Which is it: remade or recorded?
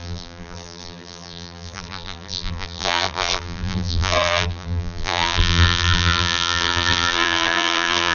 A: remade